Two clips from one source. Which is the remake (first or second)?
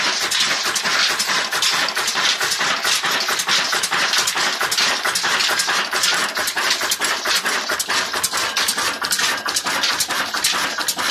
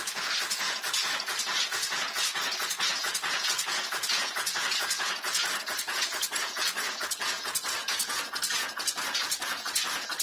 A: second